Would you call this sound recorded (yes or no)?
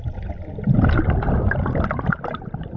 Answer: yes